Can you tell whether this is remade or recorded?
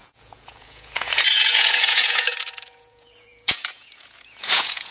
remade